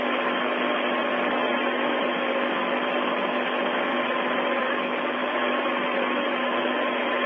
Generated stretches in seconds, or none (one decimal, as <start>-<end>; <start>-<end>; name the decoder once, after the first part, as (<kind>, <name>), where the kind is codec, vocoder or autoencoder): none